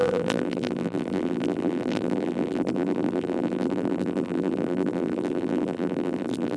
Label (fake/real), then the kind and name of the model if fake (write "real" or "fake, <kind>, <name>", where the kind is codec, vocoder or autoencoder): fake, vocoder, BigVGAN v2